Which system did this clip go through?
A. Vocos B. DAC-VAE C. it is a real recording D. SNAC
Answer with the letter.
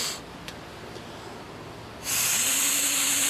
C